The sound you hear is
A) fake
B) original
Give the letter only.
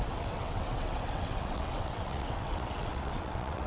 A